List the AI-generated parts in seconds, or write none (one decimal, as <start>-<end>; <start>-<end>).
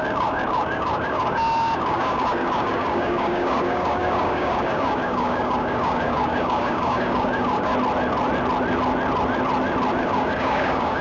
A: 0.0-7.7; 10.0-11.0